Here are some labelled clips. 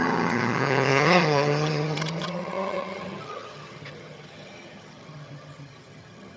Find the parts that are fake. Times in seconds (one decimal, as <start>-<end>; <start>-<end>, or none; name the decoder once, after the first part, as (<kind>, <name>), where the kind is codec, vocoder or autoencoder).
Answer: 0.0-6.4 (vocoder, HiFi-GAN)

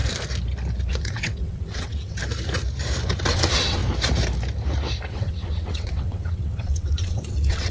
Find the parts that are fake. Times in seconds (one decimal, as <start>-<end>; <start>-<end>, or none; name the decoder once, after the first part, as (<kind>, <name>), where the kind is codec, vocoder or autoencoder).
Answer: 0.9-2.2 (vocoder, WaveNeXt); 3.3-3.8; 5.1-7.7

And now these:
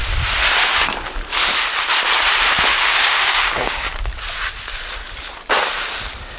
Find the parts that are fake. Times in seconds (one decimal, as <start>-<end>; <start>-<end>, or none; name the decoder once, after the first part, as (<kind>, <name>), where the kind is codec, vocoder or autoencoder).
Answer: 2.7-3.9 (codec, DAC)

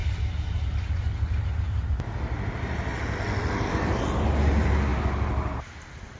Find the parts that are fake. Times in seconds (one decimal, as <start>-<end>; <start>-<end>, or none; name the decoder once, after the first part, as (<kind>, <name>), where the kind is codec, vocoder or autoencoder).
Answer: none

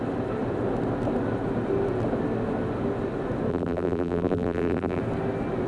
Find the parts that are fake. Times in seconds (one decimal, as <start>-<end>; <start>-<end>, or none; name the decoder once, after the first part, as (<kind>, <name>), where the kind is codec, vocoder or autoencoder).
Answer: 3.5-5.0 (vocoder, BigVGAN v2)